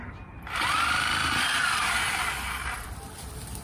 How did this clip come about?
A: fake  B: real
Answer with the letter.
A